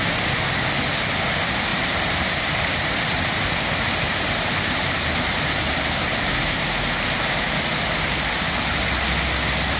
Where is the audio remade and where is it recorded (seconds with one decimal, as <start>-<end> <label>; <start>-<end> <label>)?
0.0-1.7 recorded; 1.7-6.6 remade; 6.6-7.7 recorded; 7.7-8.5 remade; 8.5-9.8 recorded